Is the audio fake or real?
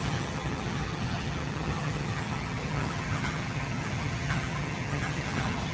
fake